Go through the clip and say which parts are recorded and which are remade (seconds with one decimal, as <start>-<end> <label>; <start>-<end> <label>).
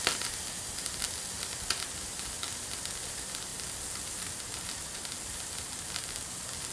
0.0-6.7 recorded